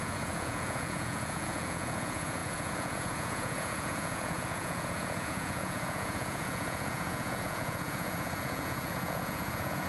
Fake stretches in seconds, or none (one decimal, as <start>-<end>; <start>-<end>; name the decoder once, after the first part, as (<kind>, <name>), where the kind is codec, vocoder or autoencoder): 0.0-9.9 (vocoder, Vocos)